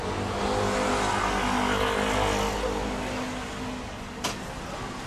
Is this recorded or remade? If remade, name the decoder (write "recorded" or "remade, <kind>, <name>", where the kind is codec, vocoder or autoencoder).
recorded